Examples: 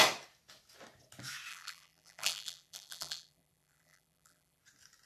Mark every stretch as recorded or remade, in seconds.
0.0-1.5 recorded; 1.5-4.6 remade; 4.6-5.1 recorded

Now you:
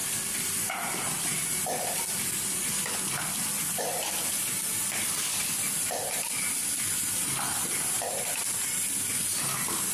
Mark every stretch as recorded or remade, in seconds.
0.0-9.9 recorded

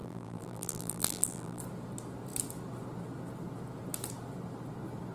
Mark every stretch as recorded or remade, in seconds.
0.0-1.6 remade; 1.6-5.1 recorded

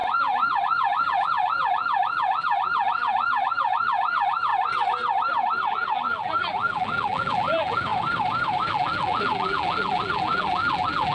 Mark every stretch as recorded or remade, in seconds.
0.0-4.5 remade; 4.5-5.7 recorded; 5.7-7.9 remade; 7.9-8.7 recorded; 8.7-11.1 remade

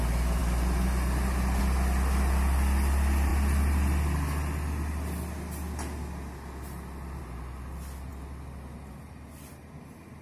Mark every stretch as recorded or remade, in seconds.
0.0-10.2 recorded

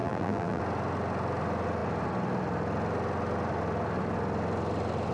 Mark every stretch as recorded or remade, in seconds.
0.0-0.6 remade; 0.6-5.1 recorded